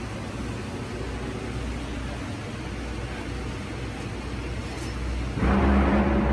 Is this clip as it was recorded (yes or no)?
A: yes